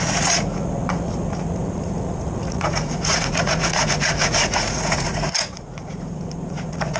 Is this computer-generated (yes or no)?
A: yes